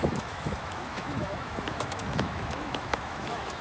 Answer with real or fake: fake